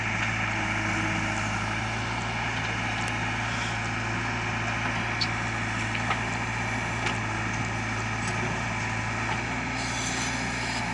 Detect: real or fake real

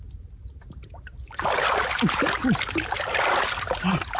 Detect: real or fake real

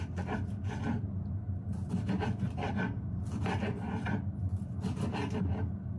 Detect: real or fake real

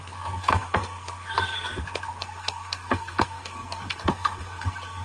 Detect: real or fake fake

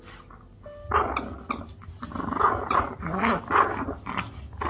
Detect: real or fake real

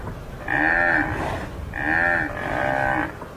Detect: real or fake real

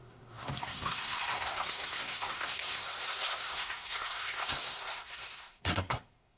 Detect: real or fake fake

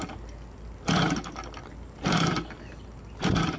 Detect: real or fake real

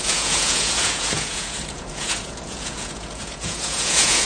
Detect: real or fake fake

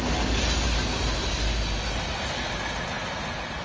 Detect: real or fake real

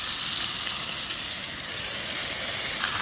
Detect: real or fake real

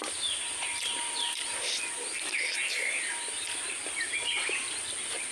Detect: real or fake real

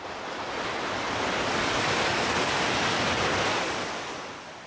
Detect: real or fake real